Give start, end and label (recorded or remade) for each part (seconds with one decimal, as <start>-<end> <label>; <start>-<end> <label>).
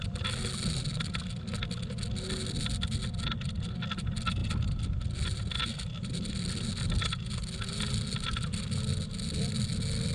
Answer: 0.0-10.1 recorded